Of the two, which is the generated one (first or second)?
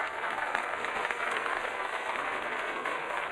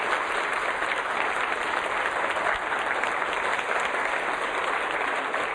first